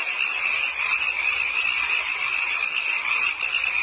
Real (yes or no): yes